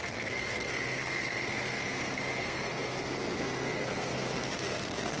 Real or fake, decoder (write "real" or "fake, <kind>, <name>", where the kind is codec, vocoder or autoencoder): fake, codec, SNAC